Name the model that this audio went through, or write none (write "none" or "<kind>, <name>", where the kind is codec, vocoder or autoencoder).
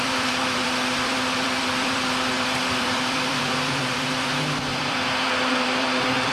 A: vocoder, BigVGAN v2